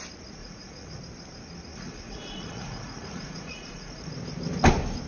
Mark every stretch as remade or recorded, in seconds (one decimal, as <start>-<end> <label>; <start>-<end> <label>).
0.0-0.4 recorded; 0.4-1.0 remade; 1.0-1.7 recorded; 1.7-4.1 remade; 4.1-5.1 recorded